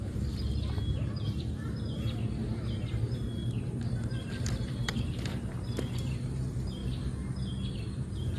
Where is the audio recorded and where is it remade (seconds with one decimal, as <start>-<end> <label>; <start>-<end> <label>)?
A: 0.0-6.8 remade; 6.8-7.7 recorded; 7.7-8.4 remade